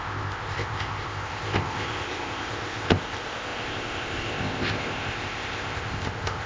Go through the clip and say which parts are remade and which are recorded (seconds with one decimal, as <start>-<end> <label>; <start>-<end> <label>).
0.0-6.5 remade